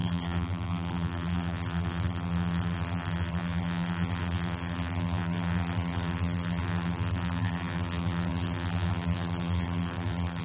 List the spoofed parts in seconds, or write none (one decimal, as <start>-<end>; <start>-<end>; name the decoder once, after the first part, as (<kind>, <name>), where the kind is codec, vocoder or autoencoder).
0.0-10.4 (vocoder, BigVGAN v2)